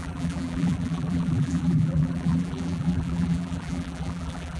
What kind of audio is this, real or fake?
fake